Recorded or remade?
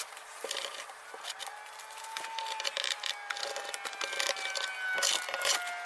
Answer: recorded